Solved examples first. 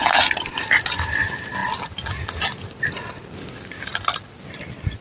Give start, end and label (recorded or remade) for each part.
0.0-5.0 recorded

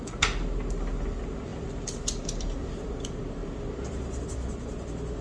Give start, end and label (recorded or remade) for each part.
0.0-1.5 recorded; 1.5-2.8 remade; 2.8-3.4 recorded; 3.4-4.2 remade; 4.2-5.2 recorded

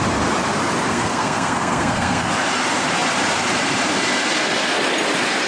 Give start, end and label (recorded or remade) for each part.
0.0-0.9 recorded; 0.9-2.3 remade; 2.3-5.5 recorded